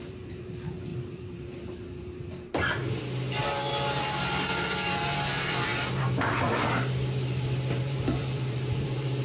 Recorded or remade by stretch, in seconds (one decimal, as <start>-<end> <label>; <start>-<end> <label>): 0.0-2.8 remade; 2.8-3.4 recorded; 3.4-9.2 remade